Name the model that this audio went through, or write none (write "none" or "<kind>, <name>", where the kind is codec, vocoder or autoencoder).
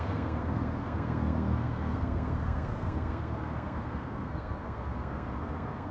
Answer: codec, SNAC